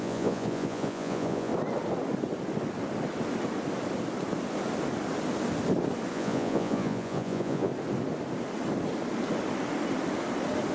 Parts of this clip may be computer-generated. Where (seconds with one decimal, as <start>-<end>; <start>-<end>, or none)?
0.0-1.5; 6.1-7.7